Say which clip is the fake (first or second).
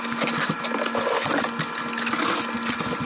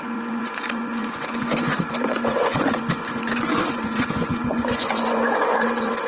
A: second